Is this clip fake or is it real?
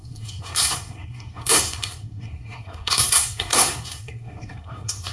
fake